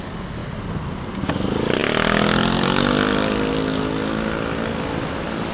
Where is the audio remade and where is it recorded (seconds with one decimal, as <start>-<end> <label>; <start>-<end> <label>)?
0.0-5.5 recorded